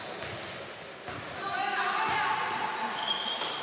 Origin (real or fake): real